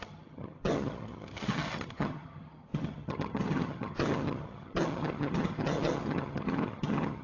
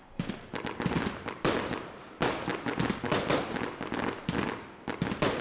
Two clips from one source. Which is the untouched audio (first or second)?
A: second